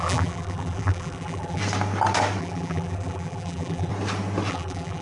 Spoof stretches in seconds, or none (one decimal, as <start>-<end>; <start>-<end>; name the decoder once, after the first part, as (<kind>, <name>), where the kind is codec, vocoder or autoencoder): 0.0-1.6 (vocoder, BigVGAN v2); 2.4-3.9; 4.5-5.0